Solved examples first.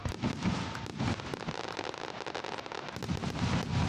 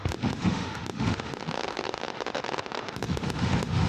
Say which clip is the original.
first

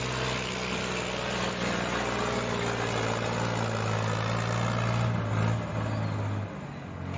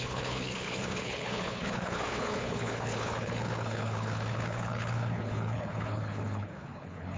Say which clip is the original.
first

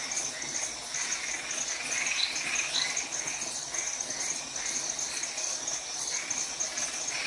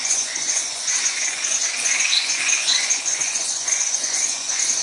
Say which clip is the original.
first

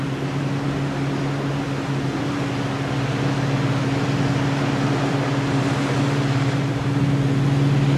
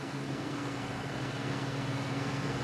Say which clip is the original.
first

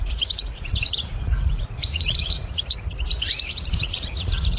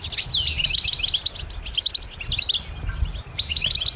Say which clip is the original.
second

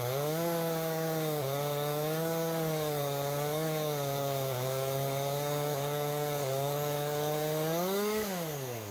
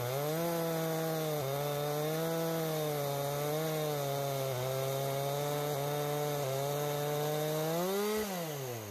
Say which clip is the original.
second